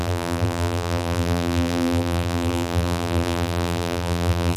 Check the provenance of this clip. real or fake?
fake